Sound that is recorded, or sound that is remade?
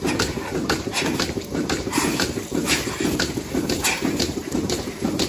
remade